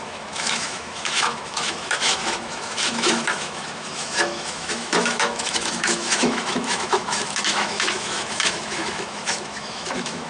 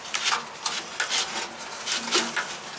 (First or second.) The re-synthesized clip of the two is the first